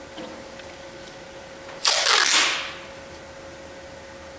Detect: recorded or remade recorded